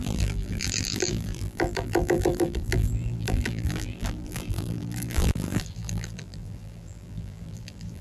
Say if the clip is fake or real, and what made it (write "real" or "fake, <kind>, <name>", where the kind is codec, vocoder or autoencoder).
fake, vocoder, BigVGAN v2